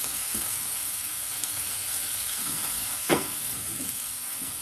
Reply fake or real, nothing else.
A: fake